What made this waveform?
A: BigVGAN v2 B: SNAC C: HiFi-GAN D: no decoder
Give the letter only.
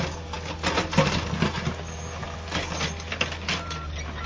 D